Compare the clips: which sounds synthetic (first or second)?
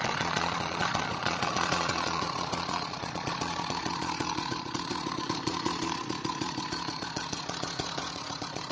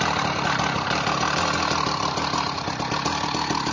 first